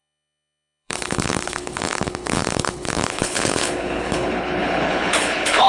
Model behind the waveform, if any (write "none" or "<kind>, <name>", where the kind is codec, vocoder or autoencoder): codec, HILCodec